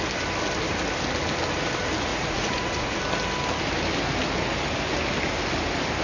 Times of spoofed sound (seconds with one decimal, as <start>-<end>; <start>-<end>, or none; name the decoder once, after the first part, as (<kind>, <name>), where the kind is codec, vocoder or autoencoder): 2.1-3.0 (vocoder, Vocos)